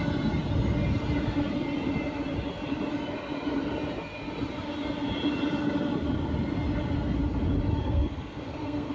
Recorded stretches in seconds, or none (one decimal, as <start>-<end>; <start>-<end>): 0.0-7.8